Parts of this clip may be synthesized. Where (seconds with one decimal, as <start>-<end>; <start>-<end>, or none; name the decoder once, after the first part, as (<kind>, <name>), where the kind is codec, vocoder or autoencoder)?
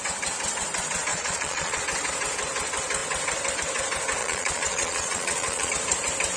1.1-1.8 (vocoder, Vocos); 4.2-5.7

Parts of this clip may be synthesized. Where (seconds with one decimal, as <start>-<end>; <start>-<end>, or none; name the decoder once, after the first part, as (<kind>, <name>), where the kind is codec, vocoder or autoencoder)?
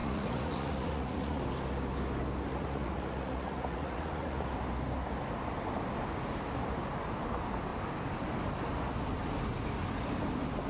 0.0-1.4 (vocoder, Vocos); 2.5-4.5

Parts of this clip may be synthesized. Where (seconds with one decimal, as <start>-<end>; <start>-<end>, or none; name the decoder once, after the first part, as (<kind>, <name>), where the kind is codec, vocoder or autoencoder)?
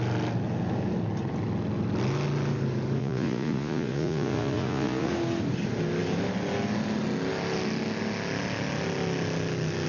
3.0-5.1 (vocoder, Vocos)